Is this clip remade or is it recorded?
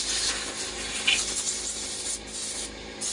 recorded